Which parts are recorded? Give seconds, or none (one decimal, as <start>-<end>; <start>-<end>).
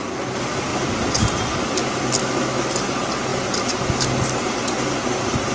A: 0.0-2.2; 2.7-5.5